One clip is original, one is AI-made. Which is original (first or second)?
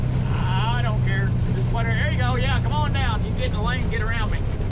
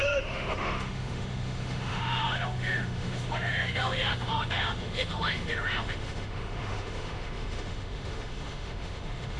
first